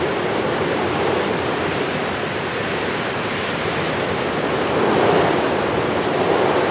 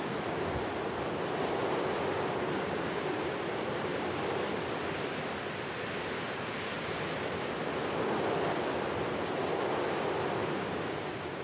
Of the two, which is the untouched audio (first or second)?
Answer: second